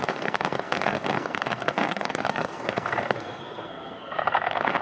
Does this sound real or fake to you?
fake